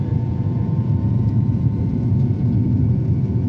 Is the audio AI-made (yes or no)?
yes